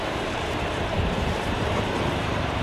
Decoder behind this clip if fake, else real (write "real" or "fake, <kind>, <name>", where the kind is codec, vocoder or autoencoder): fake, vocoder, BigVGAN v2